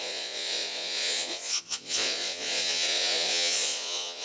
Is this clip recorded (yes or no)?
no